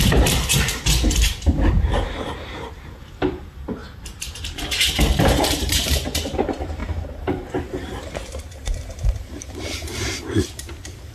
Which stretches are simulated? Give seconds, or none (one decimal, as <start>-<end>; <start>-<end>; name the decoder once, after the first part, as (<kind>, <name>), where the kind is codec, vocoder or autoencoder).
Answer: 0.0-11.1 (vocoder, BigVGAN v2)